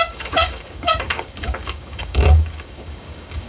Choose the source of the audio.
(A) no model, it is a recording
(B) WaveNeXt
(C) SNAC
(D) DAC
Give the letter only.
D